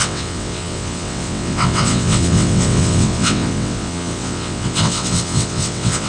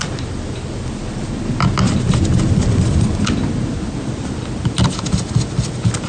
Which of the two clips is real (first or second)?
second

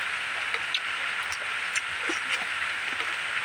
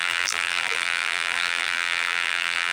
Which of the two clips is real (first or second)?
first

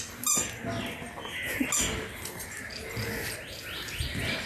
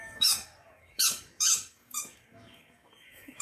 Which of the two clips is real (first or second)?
first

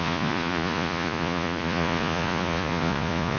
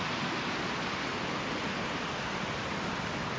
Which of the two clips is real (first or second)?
second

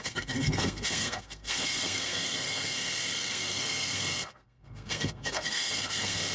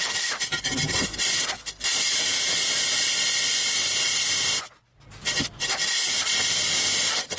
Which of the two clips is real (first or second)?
second